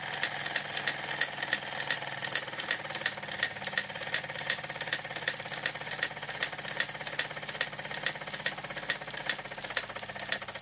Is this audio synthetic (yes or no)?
no